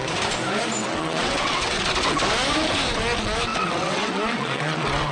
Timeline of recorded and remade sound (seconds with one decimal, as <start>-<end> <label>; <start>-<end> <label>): 0.0-0.8 recorded; 0.8-1.8 remade; 1.8-3.5 recorded; 3.5-5.1 remade